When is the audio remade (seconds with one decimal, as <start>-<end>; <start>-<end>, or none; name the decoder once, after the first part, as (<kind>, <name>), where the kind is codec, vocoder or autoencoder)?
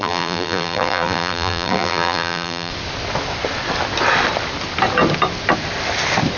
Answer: 0.0-2.7 (vocoder, BigVGAN v2)